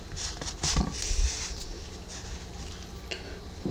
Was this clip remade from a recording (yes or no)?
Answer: no